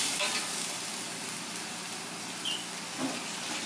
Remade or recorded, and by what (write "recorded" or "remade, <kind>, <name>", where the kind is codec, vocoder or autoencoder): recorded